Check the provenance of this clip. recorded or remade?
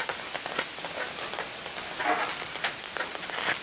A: recorded